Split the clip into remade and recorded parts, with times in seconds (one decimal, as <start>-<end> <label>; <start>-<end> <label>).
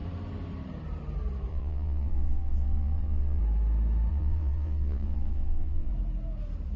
0.0-1.5 recorded; 1.5-3.4 remade; 3.4-4.1 recorded; 4.1-5.9 remade; 5.9-6.8 recorded